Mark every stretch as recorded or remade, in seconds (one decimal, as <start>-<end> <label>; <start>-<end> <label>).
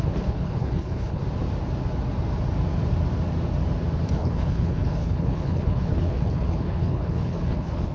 0.0-1.2 remade; 1.2-4.1 recorded; 4.1-7.9 remade